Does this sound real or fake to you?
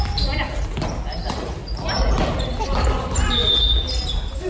real